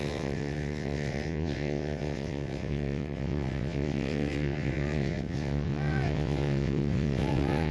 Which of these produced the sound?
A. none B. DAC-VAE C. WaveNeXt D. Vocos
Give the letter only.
C